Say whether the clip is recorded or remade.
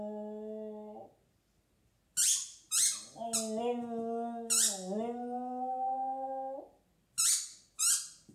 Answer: recorded